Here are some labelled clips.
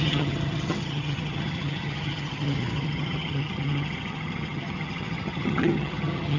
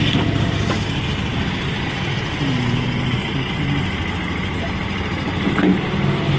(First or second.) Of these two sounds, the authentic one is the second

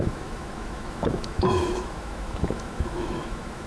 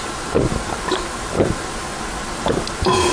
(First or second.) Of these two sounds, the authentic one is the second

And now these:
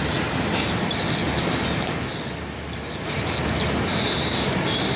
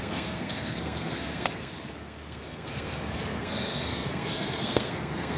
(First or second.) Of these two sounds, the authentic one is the first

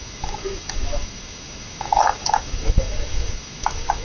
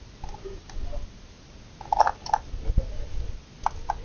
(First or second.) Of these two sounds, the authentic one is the second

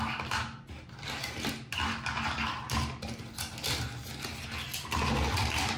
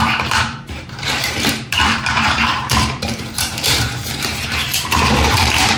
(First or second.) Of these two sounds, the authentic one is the first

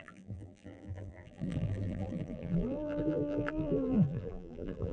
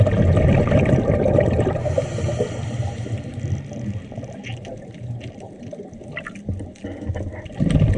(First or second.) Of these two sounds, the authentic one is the second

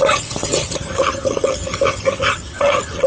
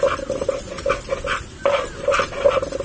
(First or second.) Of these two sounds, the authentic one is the second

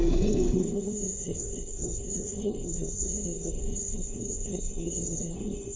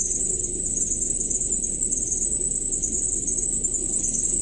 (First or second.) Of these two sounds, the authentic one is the second